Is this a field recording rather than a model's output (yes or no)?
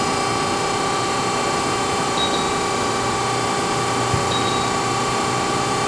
yes